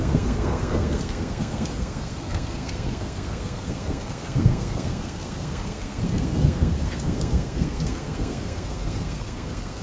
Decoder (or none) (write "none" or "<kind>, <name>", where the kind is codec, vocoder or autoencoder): codec, SNAC